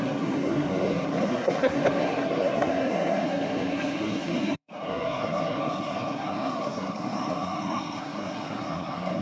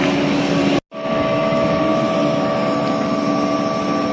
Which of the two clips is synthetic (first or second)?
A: first